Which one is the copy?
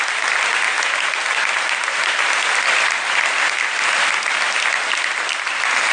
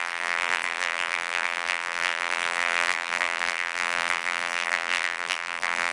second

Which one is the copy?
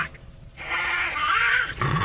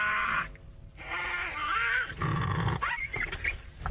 first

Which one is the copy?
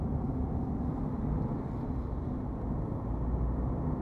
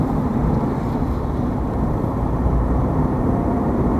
second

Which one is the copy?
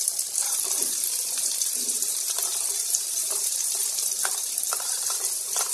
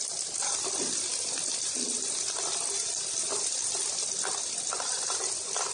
first